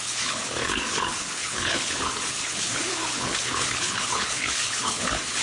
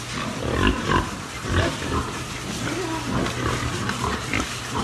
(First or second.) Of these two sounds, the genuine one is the second